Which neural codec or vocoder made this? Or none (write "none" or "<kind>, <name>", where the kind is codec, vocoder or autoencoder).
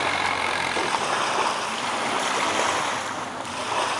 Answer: none